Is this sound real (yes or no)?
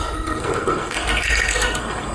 no